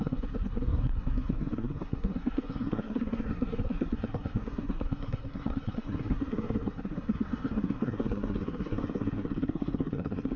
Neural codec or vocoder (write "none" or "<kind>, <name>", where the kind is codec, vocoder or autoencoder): codec, SNAC